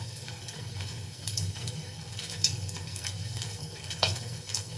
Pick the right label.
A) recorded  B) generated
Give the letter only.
B